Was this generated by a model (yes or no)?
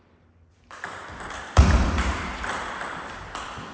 yes